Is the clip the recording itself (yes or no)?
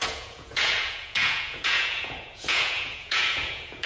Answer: no